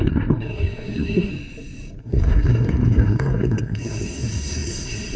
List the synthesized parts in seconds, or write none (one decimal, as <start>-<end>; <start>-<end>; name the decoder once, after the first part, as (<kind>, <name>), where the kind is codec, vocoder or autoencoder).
0.0-1.3 (codec, SNAC); 2.0-5.2